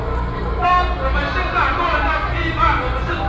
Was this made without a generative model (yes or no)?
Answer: yes